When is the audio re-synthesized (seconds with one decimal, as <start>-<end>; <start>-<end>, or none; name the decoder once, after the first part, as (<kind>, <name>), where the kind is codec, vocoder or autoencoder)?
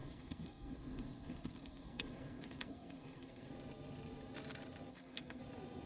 0.0-3.5 (codec, SNAC); 4.9-5.4